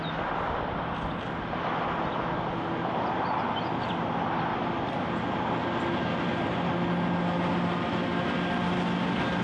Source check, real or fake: real